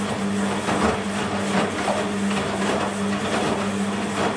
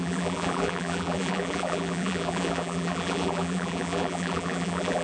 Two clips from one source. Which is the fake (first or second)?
second